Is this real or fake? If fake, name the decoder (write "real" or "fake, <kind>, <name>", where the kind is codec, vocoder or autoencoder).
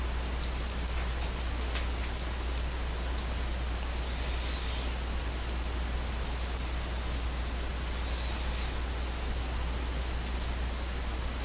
real